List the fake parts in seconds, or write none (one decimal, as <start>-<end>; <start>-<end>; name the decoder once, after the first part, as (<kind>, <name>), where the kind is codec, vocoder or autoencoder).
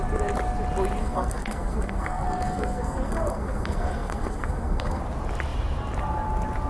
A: 1.0-5.0 (codec, SNAC)